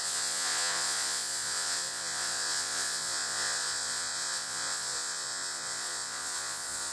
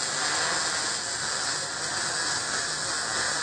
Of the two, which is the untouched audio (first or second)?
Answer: second